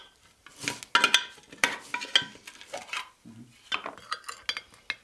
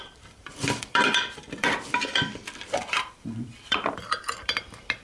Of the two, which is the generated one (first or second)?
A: second